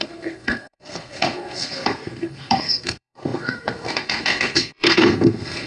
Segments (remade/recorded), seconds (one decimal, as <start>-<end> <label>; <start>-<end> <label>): 0.0-5.7 remade